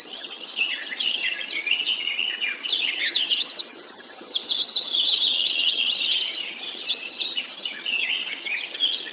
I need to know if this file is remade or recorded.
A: remade